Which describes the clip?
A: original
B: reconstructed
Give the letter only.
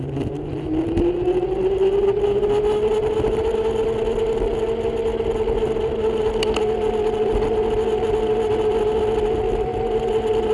A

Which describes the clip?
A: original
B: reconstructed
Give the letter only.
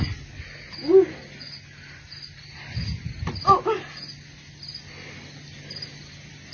A